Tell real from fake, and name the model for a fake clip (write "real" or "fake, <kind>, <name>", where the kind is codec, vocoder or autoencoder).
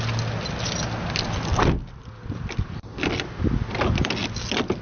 real